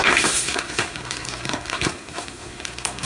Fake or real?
fake